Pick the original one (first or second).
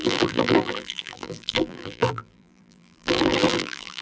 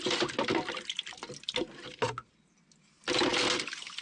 second